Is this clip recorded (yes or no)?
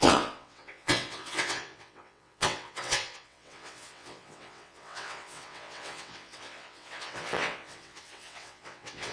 no